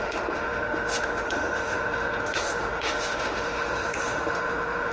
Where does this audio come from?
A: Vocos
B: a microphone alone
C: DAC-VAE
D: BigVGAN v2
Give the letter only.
C